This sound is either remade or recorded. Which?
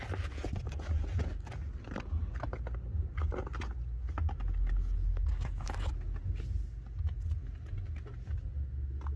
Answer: recorded